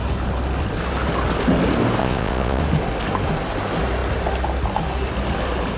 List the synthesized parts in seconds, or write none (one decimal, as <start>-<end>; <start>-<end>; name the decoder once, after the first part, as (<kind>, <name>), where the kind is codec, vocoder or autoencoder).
2.0-2.6 (vocoder, Vocos)